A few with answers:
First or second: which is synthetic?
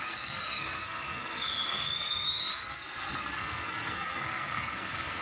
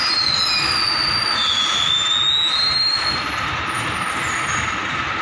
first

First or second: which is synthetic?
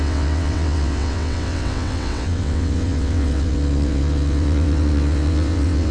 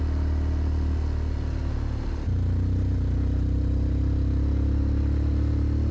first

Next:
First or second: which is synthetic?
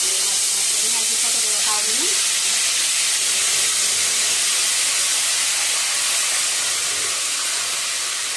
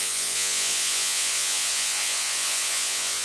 second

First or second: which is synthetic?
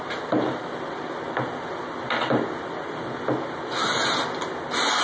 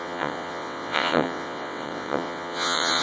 second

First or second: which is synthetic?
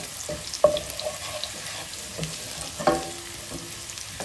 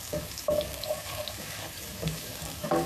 second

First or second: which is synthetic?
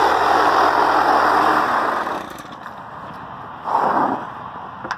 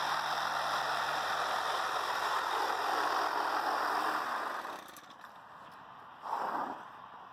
second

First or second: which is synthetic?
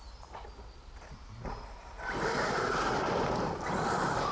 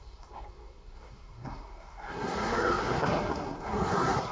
second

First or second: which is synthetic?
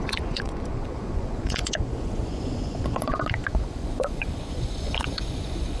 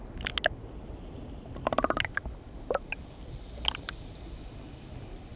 first